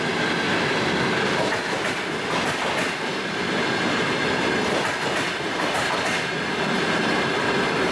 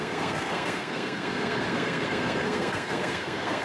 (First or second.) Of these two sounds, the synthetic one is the second